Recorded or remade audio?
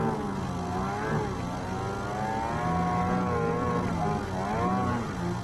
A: recorded